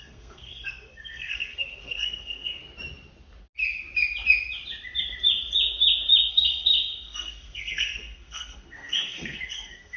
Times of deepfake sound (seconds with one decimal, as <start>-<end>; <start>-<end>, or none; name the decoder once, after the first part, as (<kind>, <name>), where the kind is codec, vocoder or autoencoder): 0.0-2.6 (codec, SNAC); 6.3-10.0